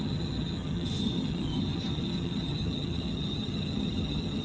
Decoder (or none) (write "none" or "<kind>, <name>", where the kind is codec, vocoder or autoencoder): vocoder, HiFi-GAN